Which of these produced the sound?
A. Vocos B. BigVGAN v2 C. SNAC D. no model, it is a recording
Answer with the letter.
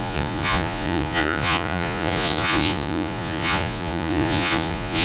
A